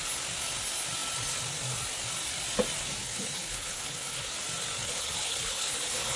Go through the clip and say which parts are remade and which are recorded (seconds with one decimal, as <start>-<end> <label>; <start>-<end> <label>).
0.0-3.0 recorded; 3.0-4.3 remade; 4.3-4.8 recorded; 4.8-6.2 remade